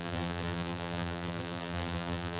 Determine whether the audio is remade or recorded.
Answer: remade